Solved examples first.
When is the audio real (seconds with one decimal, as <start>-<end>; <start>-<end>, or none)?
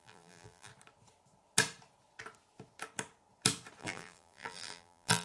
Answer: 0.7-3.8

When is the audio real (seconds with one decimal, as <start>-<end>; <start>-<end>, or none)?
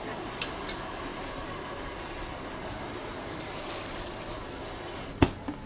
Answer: 0.0-1.1; 2.1-3.0; 3.5-5.7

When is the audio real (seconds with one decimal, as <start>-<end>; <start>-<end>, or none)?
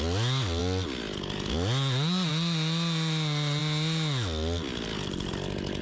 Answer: 0.0-5.8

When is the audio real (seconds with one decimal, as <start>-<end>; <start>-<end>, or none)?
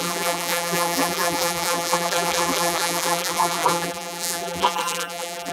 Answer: none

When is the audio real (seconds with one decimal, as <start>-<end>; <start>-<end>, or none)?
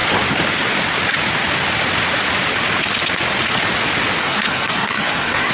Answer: 0.0-4.2